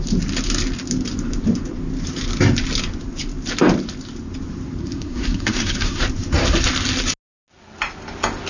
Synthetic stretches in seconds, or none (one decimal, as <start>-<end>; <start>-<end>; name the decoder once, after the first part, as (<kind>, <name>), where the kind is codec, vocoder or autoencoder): 4.8-6.0 (codec, SNAC)

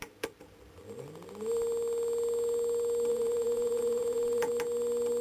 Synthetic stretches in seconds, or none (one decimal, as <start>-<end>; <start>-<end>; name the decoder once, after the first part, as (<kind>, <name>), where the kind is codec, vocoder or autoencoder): 3.1-4.5 (vocoder, Vocos)